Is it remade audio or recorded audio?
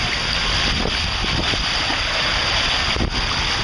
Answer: recorded